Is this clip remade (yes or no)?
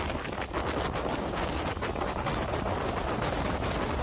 no